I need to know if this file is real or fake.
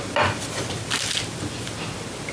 real